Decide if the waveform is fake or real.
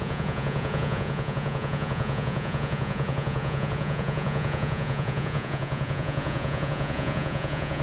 fake